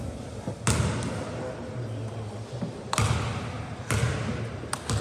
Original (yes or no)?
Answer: yes